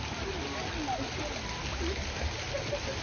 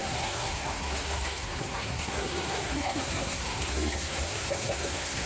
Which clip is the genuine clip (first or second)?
first